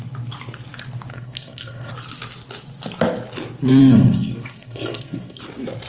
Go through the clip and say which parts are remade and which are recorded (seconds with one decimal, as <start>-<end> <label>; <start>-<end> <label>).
0.0-1.1 recorded; 1.1-1.9 remade; 1.9-3.8 recorded; 3.8-5.4 remade; 5.4-5.9 recorded